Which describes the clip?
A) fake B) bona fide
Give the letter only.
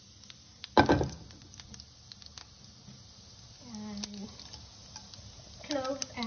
B